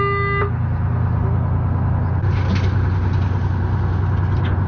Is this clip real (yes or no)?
yes